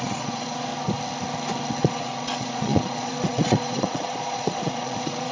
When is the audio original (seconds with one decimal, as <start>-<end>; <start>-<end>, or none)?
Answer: 0.7-1.8